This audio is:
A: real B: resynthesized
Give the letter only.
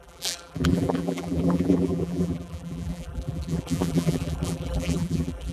B